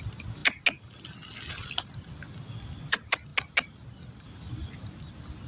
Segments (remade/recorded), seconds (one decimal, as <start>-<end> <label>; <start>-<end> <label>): 0.0-5.5 recorded